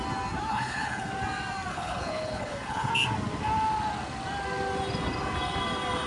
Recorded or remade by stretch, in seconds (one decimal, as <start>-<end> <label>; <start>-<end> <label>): 0.0-0.5 recorded; 0.5-1.1 remade; 1.1-1.7 recorded; 1.7-2.9 remade; 2.9-6.1 recorded